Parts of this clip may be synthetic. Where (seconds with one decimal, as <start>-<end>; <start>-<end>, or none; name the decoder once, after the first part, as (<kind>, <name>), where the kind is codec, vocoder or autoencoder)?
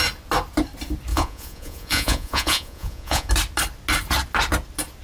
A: 1.1-3.3 (vocoder, Vocos)